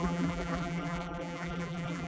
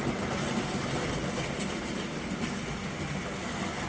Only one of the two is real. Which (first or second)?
second